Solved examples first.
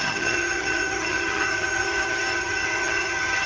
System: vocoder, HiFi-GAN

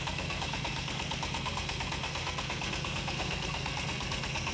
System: codec, SNAC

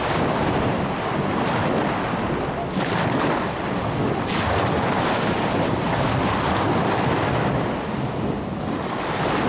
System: none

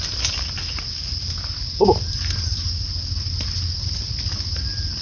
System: none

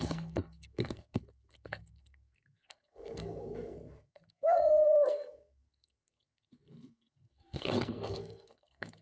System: codec, SNAC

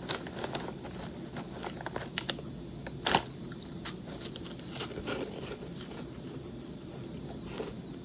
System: none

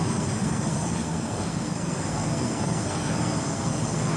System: codec, SNAC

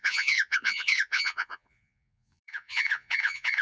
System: vocoder, Vocos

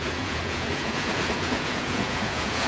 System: vocoder, Vocos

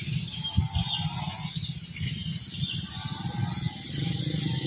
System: none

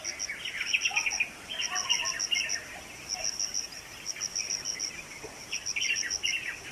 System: none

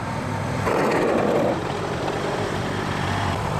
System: none